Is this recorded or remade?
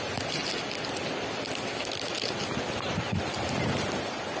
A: recorded